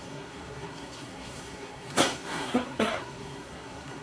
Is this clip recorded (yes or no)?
no